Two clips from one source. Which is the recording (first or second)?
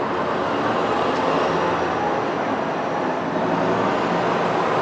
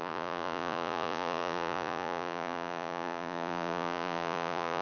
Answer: first